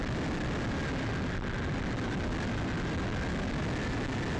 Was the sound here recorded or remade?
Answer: recorded